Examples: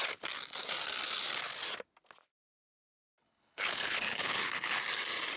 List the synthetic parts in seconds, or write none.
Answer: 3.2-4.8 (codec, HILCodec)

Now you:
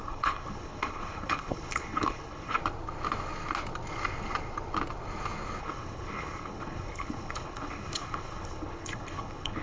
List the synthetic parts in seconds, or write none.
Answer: 0.0-2.6 (codec, HILCodec); 5.6-9.6

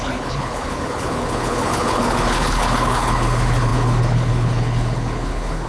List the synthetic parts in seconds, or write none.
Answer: 0.0-5.7 (codec, HILCodec)

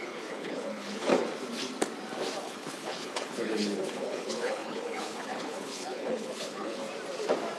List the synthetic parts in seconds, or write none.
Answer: 0.0-1.1 (codec, HILCodec); 2.4-6.8

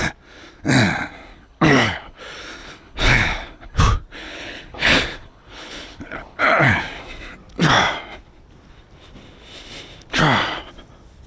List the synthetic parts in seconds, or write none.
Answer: 1.3-2.2 (codec, HILCodec); 2.6-3.8; 4.2-6.8